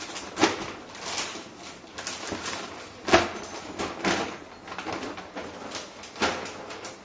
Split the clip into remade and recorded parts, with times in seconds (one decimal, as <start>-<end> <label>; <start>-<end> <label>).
0.0-7.0 recorded